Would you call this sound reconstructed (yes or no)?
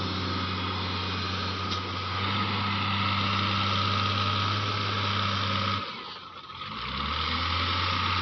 no